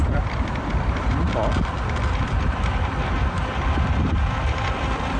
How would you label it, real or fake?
fake